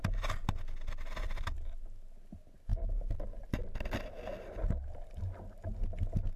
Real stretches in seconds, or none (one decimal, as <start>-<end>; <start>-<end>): 0.0-6.4